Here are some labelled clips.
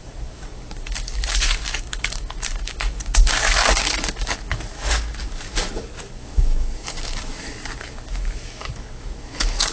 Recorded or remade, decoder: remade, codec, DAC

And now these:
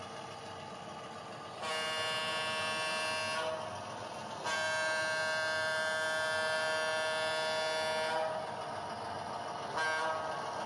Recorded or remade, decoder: recorded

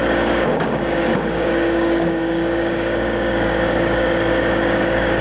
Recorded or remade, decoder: remade, codec, DAC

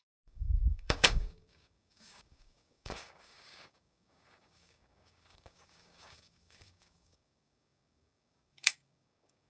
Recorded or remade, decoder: remade, codec, DAC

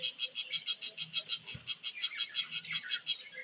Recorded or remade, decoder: recorded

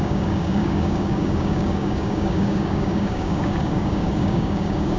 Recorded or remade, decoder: remade, codec, DAC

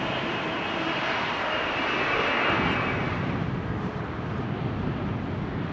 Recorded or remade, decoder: recorded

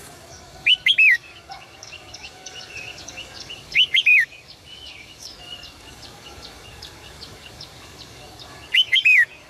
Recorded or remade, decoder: remade, codec, DAC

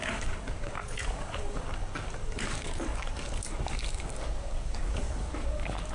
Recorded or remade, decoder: remade, codec, DAC